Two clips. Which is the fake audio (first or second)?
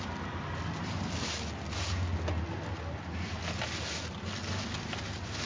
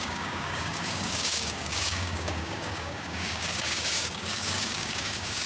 second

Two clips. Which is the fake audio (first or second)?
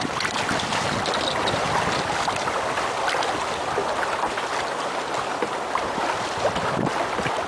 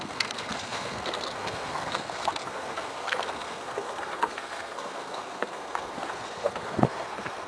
second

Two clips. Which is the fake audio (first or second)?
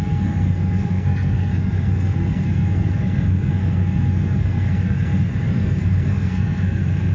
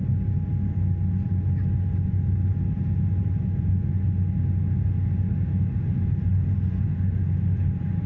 first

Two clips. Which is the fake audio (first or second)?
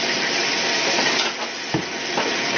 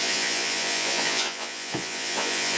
second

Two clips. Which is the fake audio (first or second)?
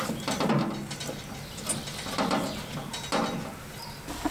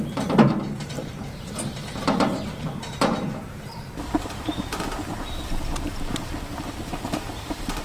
second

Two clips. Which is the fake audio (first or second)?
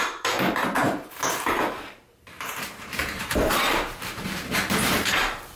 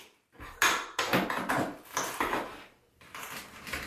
first